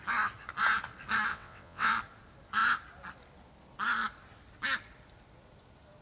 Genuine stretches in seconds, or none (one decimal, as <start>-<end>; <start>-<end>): 0.0-1.3; 1.9-6.0